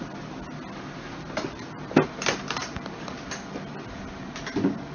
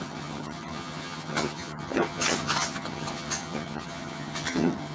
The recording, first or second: first